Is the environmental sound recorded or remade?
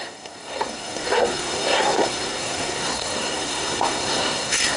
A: remade